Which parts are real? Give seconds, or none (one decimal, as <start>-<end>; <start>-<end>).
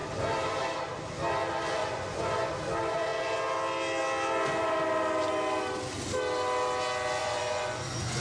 0.0-1.8; 2.5-7.2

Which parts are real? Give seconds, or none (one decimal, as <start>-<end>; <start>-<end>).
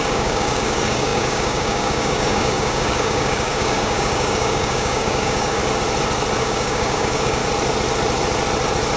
5.6-6.4; 7.4-9.0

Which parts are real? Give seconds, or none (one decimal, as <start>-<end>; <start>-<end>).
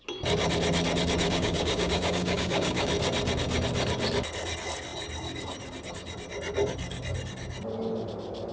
0.0-1.2; 2.9-8.5